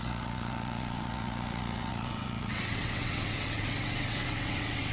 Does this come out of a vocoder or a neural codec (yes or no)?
yes